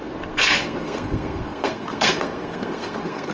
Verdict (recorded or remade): remade